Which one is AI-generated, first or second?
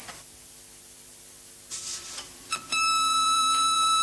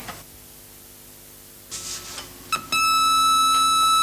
first